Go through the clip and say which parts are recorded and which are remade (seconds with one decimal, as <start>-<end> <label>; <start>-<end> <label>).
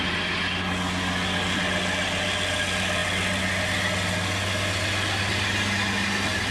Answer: 0.0-6.5 recorded